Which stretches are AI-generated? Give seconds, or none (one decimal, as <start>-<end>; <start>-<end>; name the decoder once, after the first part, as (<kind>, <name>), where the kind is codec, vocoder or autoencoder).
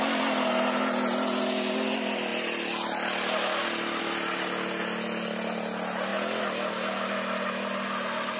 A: none